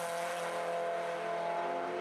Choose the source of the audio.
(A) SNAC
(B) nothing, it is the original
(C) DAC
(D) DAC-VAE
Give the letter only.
B